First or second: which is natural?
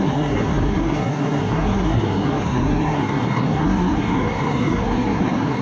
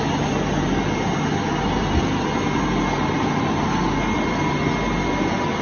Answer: second